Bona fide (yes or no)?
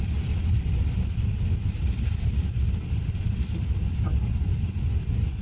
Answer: no